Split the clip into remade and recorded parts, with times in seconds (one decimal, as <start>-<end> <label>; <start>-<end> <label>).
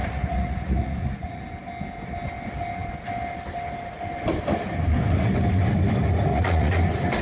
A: 0.0-1.4 remade; 1.4-6.3 recorded; 6.3-6.8 remade; 6.8-7.2 recorded